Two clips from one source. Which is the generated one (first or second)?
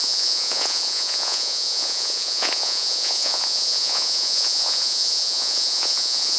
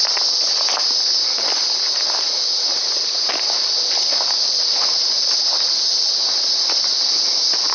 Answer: first